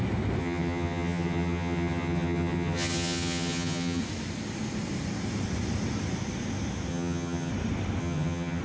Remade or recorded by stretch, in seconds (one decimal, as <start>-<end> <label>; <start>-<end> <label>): 0.0-0.4 recorded; 0.4-4.0 remade; 4.0-6.9 recorded; 6.9-7.5 remade; 7.5-8.0 recorded; 8.0-8.6 remade